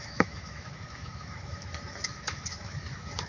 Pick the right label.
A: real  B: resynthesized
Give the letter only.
B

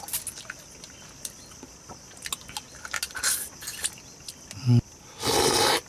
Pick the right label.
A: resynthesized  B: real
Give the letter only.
B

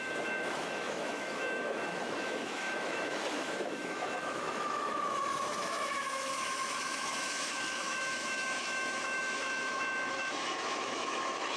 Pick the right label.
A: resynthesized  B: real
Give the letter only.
A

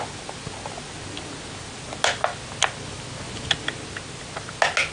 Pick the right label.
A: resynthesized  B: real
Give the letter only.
B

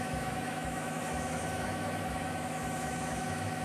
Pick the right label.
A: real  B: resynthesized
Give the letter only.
B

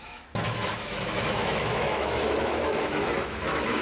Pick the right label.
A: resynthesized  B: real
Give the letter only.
A